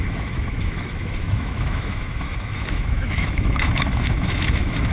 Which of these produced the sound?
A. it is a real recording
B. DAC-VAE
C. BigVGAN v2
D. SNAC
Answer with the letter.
B